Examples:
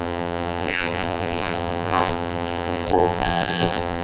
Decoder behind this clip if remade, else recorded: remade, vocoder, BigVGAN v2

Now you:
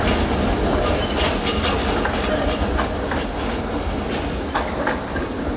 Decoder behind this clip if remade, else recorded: recorded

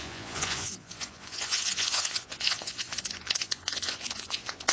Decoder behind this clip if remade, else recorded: remade, vocoder, Vocos